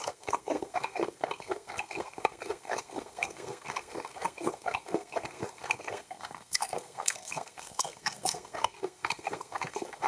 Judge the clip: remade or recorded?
remade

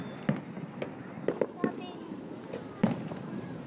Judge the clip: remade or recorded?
recorded